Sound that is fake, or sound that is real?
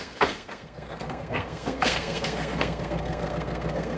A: fake